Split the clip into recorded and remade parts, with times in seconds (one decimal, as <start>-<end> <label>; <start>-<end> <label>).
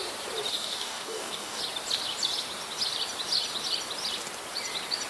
0.0-0.5 recorded; 0.5-1.6 remade; 1.6-5.1 recorded